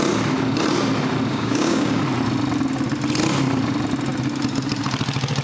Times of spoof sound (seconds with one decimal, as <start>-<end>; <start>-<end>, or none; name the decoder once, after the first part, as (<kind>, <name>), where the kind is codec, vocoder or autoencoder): 1.3-2.0 (codec, DAC)